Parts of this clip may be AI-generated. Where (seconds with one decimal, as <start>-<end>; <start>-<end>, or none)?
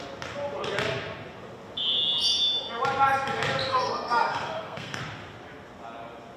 3.7-5.0